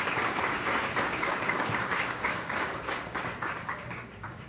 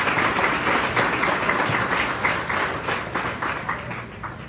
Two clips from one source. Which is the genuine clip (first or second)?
second